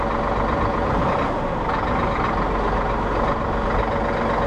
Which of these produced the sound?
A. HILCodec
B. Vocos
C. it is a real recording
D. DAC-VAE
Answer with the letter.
C